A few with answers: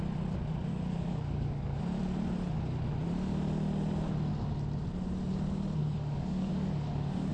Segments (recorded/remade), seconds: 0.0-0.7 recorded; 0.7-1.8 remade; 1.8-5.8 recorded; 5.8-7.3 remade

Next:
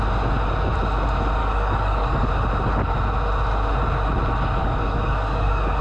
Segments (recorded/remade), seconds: 0.0-1.4 recorded; 1.4-2.3 remade; 2.3-4.6 recorded; 4.6-5.8 remade

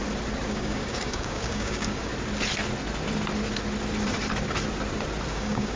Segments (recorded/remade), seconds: 0.0-0.5 recorded; 0.5-2.1 remade; 2.1-5.3 recorded; 5.3-5.8 remade

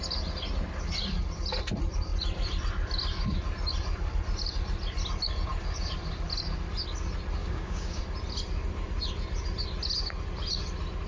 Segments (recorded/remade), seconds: 0.0-7.4 recorded; 7.4-8.0 remade; 8.0-11.1 recorded

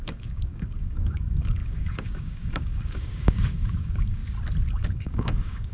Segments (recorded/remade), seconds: 0.0-4.2 remade; 4.2-4.7 recorded; 4.7-5.7 remade

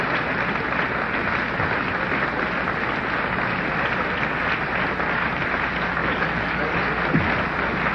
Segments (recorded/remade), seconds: 0.0-6.0 recorded; 6.0-6.8 remade; 6.8-7.9 recorded

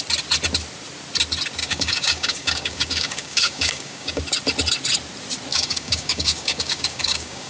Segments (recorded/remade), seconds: 0.0-1.6 recorded; 1.6-4.2 remade; 4.2-5.5 recorded; 5.5-7.5 remade

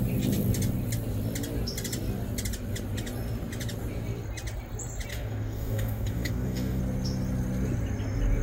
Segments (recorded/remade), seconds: 0.0-5.1 recorded; 5.1-6.8 remade; 6.8-8.4 recorded